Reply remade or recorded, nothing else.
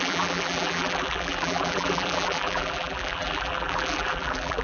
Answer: remade